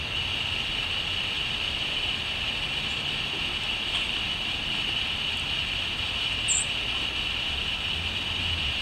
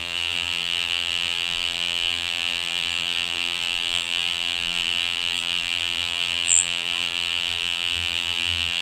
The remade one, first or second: second